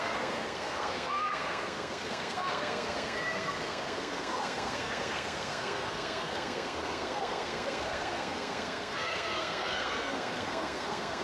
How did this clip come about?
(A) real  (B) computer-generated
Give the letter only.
B